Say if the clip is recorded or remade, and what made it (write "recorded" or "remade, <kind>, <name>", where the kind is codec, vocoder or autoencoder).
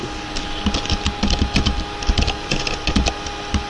recorded